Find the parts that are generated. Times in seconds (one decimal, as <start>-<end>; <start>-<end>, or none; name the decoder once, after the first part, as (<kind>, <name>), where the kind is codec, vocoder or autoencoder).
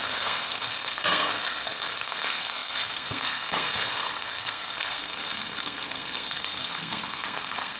0.0-7.8 (codec, SNAC)